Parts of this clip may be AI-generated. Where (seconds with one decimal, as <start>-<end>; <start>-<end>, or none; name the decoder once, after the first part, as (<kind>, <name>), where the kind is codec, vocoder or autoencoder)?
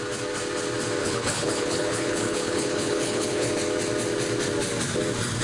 1.0-3.5 (codec, HILCodec)